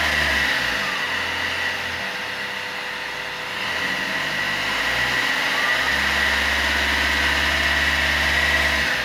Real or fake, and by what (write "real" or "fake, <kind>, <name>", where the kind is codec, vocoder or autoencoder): real